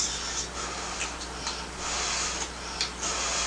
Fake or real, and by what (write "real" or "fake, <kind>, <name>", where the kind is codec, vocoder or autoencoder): real